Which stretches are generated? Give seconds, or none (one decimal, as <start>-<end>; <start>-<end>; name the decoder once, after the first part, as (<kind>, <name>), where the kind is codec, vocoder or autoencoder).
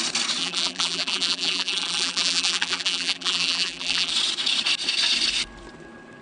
0.4-4.1 (vocoder, BigVGAN v2)